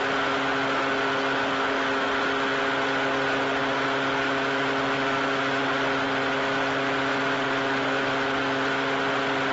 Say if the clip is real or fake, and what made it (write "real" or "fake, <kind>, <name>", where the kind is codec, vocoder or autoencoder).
real